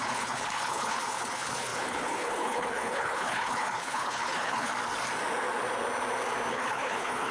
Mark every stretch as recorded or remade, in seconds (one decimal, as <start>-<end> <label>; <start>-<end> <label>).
0.0-4.7 remade; 4.7-6.5 recorded; 6.5-7.3 remade